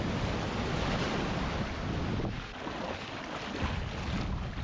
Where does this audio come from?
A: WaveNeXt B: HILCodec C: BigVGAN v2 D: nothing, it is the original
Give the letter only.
D